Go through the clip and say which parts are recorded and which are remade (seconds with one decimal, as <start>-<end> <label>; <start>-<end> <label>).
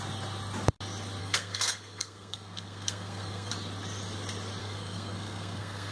0.0-1.2 recorded; 1.2-3.5 remade; 3.5-4.6 recorded; 4.6-5.9 remade